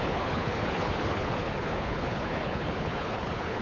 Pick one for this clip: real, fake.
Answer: fake